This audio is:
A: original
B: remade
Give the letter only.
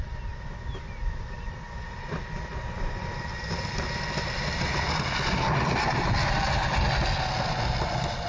A